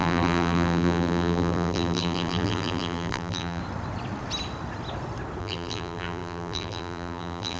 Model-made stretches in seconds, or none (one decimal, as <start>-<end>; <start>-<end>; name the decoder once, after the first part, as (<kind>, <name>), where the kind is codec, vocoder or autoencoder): 0.0-3.6 (vocoder, BigVGAN v2); 5.4-7.6